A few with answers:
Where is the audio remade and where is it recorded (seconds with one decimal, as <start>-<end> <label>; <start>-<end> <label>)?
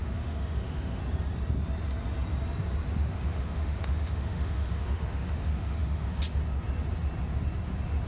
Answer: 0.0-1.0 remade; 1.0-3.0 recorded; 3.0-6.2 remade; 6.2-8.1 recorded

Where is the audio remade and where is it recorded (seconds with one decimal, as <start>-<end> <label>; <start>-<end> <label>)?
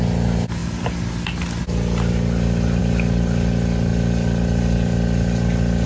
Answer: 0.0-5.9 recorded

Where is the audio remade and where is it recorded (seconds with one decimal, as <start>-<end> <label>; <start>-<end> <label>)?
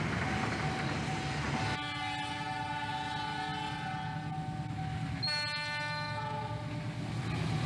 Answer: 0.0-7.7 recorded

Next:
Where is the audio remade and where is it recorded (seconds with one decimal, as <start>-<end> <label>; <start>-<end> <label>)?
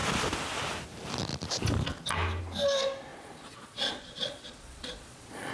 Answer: 0.0-3.1 recorded; 3.1-5.5 remade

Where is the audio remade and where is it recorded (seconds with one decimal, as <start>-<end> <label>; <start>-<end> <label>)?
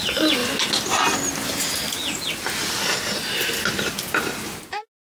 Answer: 0.0-5.1 recorded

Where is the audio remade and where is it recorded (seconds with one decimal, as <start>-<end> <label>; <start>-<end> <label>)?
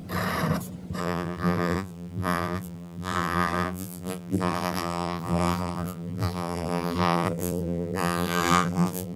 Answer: 0.0-1.0 recorded; 1.0-9.2 remade